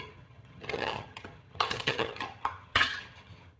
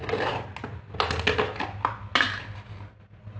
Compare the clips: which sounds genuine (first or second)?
second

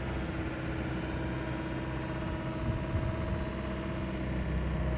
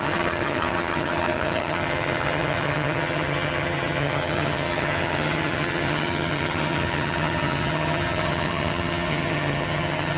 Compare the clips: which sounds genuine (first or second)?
first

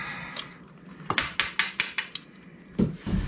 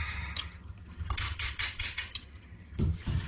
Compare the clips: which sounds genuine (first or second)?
first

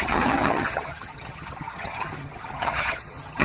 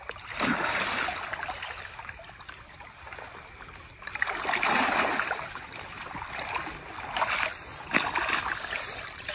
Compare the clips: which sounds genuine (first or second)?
second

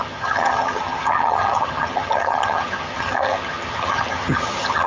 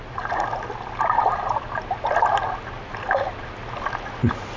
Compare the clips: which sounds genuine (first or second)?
second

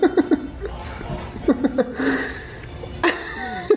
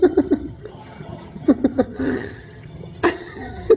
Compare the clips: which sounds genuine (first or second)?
first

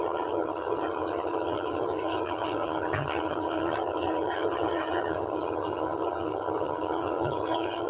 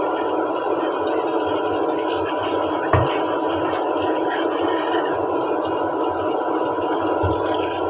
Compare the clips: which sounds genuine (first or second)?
second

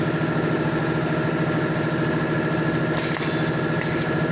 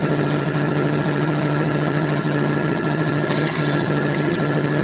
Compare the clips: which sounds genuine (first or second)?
first